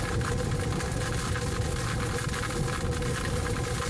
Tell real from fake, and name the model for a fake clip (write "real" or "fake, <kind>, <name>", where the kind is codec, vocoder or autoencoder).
real